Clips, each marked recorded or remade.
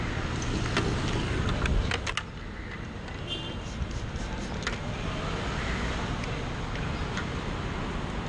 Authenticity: recorded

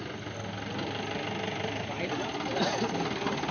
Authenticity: recorded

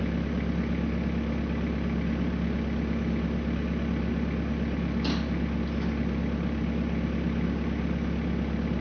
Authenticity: recorded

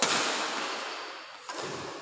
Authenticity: recorded